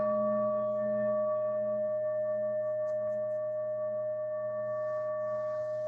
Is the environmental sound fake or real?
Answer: real